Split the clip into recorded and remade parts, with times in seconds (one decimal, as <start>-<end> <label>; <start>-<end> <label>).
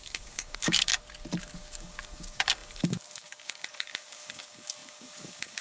0.0-0.9 remade; 0.9-1.4 recorded; 1.4-5.6 remade